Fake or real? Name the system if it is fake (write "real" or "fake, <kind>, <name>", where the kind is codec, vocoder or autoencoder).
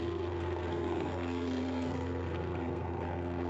fake, codec, SNAC